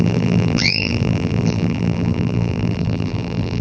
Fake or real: fake